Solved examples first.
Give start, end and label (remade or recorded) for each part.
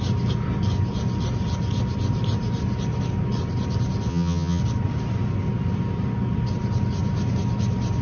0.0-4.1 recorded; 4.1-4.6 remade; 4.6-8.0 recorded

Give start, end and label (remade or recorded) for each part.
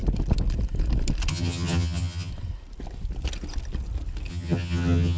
0.0-1.3 recorded; 1.3-2.3 remade; 2.3-4.3 recorded; 4.3-5.2 remade